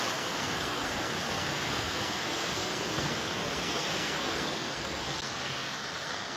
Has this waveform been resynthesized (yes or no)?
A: yes